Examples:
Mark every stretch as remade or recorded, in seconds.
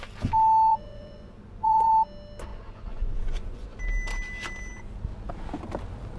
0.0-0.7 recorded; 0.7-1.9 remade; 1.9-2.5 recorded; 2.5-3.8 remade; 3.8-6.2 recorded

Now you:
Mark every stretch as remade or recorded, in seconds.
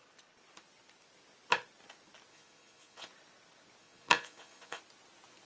0.0-2.3 recorded; 2.3-3.1 remade; 3.1-3.8 recorded; 3.8-4.8 remade; 4.8-5.5 recorded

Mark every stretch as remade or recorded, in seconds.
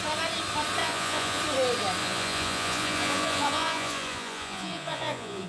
0.0-0.8 recorded; 0.8-1.4 remade; 1.4-2.0 recorded; 2.0-5.5 remade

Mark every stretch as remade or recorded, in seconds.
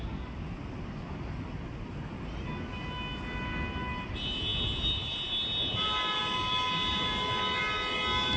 0.0-8.4 recorded